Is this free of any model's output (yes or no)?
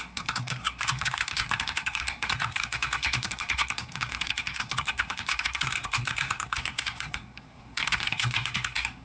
no